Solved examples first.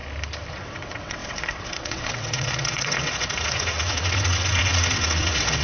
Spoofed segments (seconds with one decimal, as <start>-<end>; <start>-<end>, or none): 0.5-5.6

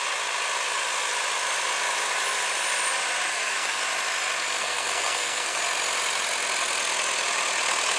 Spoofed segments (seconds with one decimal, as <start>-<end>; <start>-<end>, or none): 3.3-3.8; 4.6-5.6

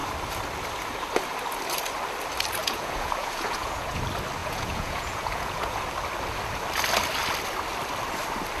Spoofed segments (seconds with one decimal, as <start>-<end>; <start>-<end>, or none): 2.6-4.0; 4.4-5.8

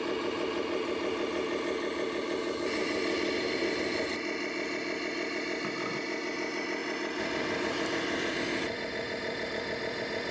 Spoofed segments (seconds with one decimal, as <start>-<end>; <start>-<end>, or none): none

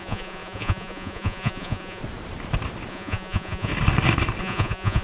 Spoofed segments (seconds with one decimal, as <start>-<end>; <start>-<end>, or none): 0.0-2.0; 2.9-3.7; 4.4-5.0